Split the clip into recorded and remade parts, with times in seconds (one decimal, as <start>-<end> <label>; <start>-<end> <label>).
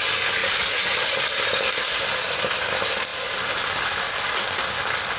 0.0-5.2 recorded